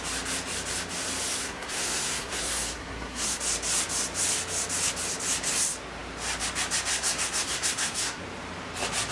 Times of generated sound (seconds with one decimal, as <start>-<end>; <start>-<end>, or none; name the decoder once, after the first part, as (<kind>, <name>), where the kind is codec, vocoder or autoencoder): 1.4-3.4 (codec, SNAC); 6.9-8.2